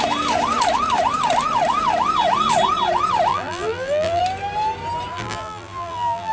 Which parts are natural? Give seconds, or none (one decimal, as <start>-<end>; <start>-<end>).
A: 0.0-3.3; 4.2-5.1